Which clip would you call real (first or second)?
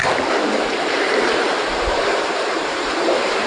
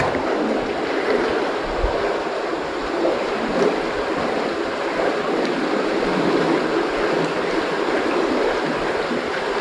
second